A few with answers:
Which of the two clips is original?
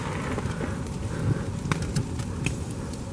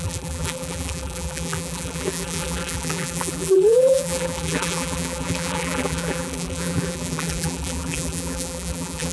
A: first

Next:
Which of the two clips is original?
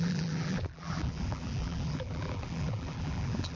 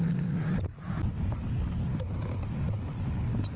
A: second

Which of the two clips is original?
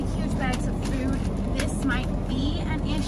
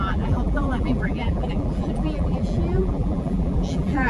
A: first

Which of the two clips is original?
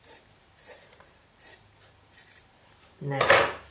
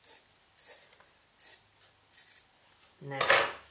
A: second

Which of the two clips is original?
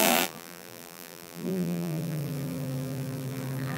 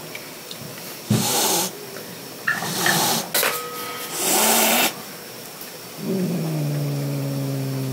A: second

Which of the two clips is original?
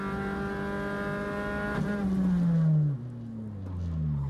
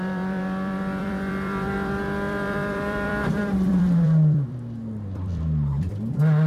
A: first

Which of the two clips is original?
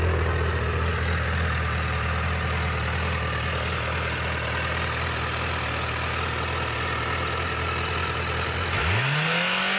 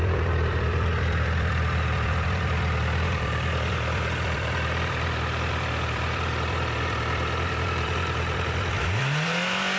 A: first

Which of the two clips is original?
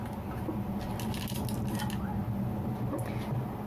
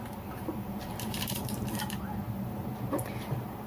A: first